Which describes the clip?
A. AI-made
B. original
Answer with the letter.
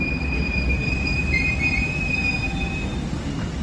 B